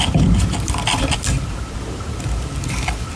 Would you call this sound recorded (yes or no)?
no